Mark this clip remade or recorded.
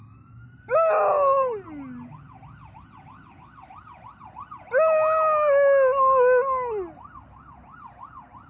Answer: recorded